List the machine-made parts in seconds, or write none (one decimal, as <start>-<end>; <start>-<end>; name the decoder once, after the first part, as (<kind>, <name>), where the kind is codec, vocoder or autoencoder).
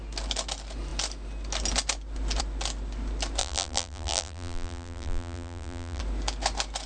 3.4-6.0 (vocoder, BigVGAN v2)